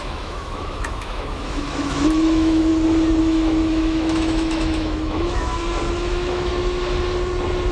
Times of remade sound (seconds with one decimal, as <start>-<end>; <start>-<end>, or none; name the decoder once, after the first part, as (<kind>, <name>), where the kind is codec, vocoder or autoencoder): 0.0-2.7 (autoencoder, DAC-VAE); 3.2-5.5; 6.1-6.5